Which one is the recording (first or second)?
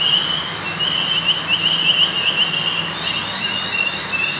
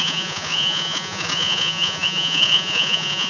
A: first